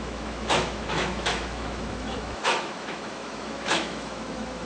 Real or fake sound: fake